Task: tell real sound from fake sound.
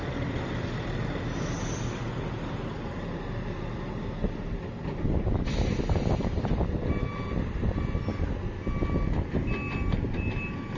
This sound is real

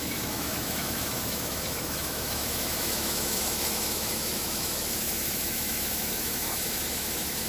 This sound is fake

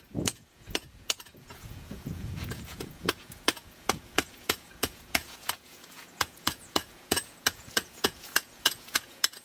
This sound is fake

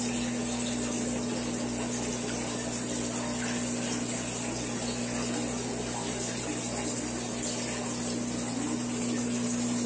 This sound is real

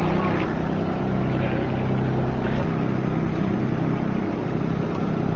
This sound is real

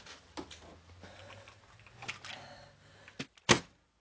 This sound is real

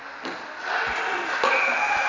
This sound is real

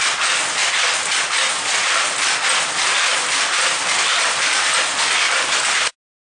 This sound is real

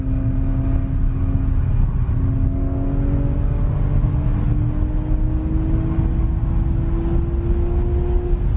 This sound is real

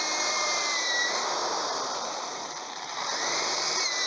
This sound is fake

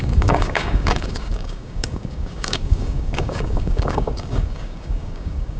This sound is fake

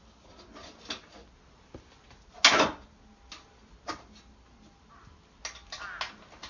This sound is real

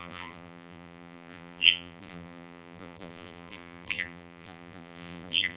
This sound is fake